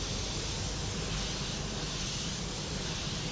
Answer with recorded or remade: recorded